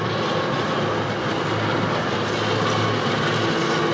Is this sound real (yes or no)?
yes